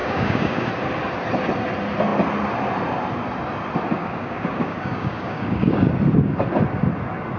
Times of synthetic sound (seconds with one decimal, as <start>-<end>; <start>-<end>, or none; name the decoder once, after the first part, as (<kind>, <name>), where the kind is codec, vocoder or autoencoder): 0.0-0.7 (codec, DAC); 4.0-5.9